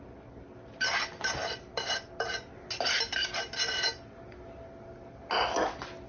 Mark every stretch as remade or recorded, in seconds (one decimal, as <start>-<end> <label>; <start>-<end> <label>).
0.0-6.1 recorded